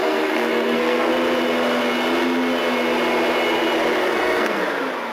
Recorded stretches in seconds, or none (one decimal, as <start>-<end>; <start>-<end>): 1.1-4.0; 4.6-5.1